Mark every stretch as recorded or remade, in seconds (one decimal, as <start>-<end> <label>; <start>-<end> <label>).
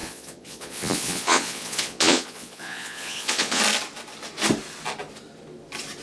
0.0-3.6 remade; 3.6-6.0 recorded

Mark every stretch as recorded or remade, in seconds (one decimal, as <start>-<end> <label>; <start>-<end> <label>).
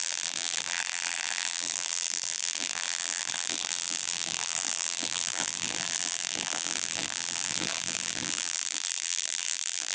0.0-9.9 remade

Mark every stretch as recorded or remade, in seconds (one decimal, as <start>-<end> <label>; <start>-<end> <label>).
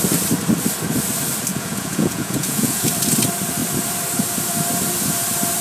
0.0-1.5 recorded; 1.5-2.9 remade; 2.9-5.6 recorded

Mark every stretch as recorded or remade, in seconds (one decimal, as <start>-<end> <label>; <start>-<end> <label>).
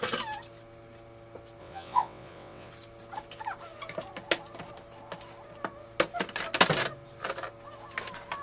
0.0-1.6 recorded; 1.6-2.7 remade; 2.7-8.4 recorded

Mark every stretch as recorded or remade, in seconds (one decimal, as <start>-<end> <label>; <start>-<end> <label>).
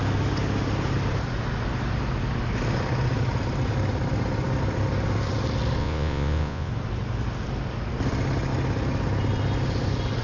0.0-5.8 recorded; 5.8-6.7 remade; 6.7-10.2 recorded